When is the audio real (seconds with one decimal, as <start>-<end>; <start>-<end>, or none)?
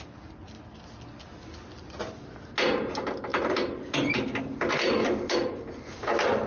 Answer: 0.0-6.5